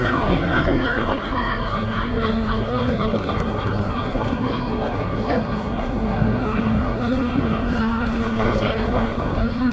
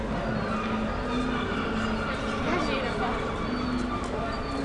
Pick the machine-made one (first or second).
first